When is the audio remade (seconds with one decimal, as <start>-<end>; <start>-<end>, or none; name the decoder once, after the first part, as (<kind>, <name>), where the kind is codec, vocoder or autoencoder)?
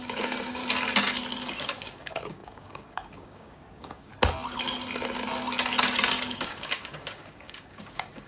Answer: 0.0-0.6 (codec, DAC); 1.6-4.1; 6.1-8.3